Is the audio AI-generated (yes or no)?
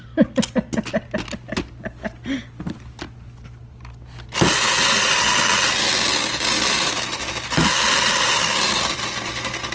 no